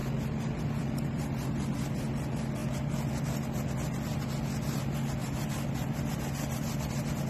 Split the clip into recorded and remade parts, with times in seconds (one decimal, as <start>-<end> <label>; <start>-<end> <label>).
0.0-7.3 recorded